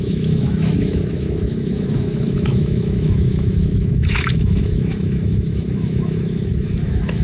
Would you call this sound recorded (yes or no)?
no